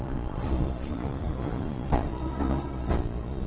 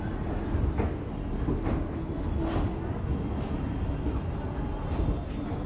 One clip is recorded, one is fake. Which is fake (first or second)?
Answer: first